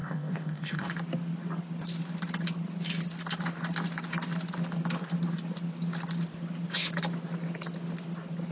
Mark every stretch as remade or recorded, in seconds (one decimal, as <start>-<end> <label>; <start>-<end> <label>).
0.0-0.9 remade; 0.9-8.5 recorded